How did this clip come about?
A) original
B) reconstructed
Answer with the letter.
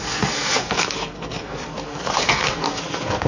B